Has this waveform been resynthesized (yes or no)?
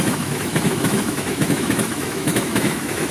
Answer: yes